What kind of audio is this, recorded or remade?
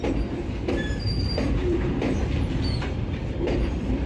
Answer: remade